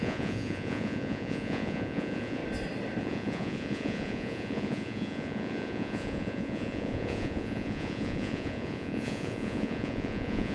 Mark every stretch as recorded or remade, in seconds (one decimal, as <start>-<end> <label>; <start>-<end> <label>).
0.0-2.4 remade; 2.4-3.0 recorded; 3.0-10.5 remade